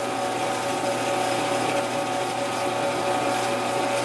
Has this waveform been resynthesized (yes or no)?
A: no